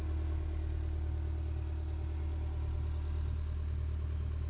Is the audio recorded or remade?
recorded